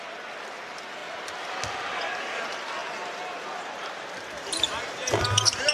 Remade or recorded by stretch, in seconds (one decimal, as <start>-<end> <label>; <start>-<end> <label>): 0.0-1.0 remade; 1.0-2.2 recorded; 2.2-2.8 remade; 2.8-4.6 recorded; 4.6-5.7 remade